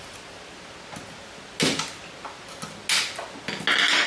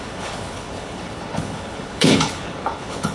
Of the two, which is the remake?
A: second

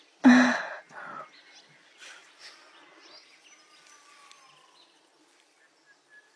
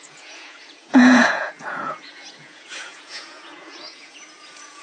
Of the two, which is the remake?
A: second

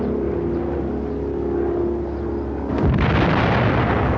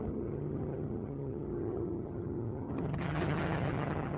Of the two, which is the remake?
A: second